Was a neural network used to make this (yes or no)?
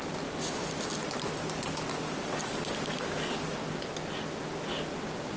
no